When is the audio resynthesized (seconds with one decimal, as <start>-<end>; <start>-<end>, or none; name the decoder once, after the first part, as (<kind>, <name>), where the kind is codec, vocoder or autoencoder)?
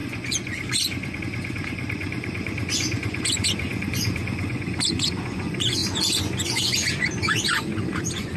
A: 0.0-8.4 (vocoder, Vocos)